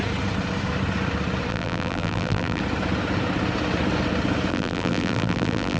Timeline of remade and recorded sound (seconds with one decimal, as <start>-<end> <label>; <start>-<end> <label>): 0.0-1.5 recorded; 1.5-2.6 remade; 2.6-4.5 recorded; 4.5-5.8 remade